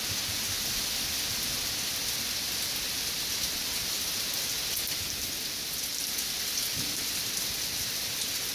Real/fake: real